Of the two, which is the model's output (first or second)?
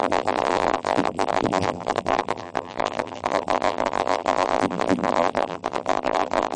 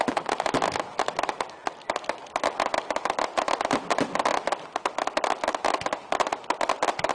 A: first